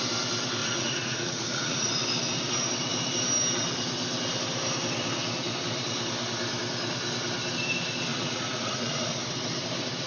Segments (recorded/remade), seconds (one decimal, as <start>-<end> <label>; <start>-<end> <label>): 0.0-0.6 recorded; 0.6-1.9 remade; 1.9-8.1 recorded; 8.1-9.0 remade; 9.0-10.1 recorded